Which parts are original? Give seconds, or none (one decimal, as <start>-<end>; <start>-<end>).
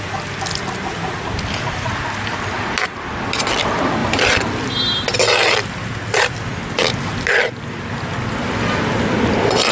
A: 0.0-9.7